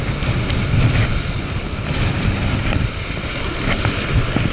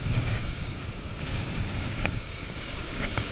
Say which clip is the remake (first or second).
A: second